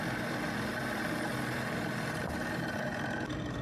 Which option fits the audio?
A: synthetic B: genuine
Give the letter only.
B